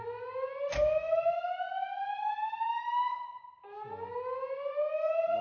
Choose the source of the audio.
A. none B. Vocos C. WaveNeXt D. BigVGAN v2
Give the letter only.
A